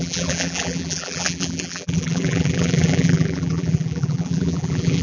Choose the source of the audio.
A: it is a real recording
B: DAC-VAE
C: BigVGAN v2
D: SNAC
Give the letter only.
C